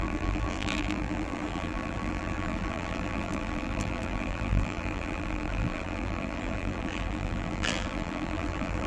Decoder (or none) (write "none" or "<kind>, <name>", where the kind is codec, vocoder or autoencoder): vocoder, BigVGAN v2